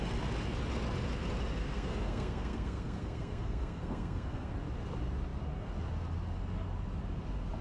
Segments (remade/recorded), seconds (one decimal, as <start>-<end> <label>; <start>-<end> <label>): 0.0-1.6 recorded; 1.6-4.5 remade; 4.5-7.6 recorded